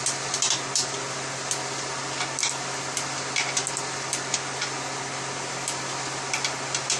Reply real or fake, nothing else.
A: real